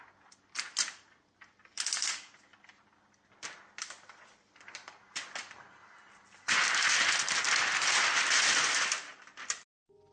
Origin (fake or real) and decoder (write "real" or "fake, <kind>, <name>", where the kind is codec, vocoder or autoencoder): real